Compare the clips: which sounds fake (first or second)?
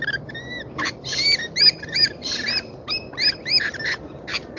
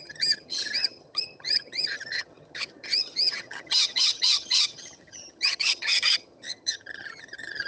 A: second